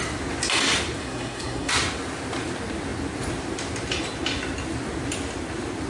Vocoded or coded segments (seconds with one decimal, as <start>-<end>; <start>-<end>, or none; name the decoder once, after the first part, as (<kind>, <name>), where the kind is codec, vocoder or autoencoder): 1.0-1.7 (codec, SNAC)